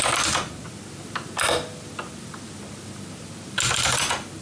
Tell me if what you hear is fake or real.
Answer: real